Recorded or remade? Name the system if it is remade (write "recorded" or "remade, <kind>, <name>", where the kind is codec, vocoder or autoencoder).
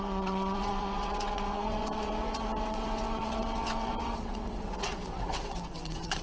remade, vocoder, WaveNeXt